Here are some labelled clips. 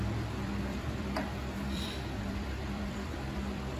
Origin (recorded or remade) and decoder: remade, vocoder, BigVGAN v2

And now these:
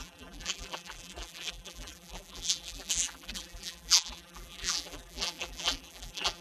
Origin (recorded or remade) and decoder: remade, vocoder, BigVGAN v2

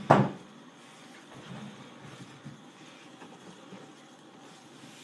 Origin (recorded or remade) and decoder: remade, vocoder, Vocos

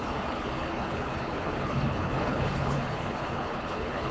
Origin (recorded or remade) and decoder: remade, codec, HILCodec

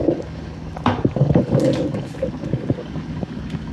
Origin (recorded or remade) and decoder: remade, codec, DAC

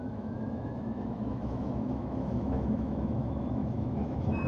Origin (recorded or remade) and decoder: remade, autoencoder, DAC-VAE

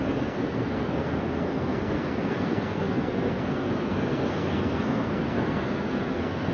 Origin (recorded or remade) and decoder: remade, codec, SNAC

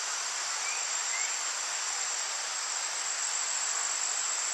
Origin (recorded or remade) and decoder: recorded